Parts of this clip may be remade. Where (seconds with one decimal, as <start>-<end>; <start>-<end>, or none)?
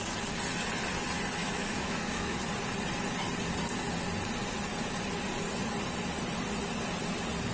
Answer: 1.4-2.4